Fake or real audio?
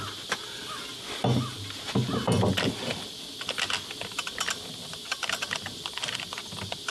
real